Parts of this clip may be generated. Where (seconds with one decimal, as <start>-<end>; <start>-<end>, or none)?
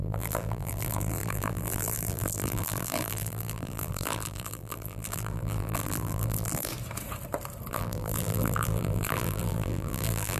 0.0-6.7; 7.7-10.4